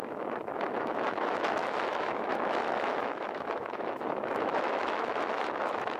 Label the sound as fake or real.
fake